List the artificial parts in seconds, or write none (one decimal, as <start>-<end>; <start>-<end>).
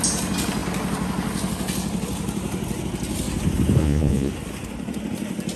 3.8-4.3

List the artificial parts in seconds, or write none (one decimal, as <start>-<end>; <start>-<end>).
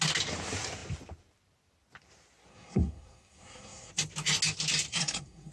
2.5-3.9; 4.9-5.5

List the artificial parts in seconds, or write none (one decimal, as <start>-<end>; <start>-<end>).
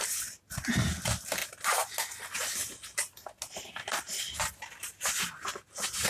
none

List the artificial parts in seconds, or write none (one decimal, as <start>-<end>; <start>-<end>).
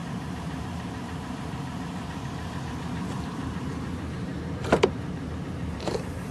0.0-6.3